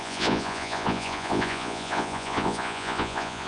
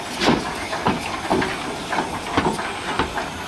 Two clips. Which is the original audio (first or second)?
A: second